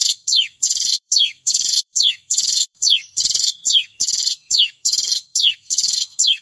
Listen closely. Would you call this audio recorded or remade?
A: remade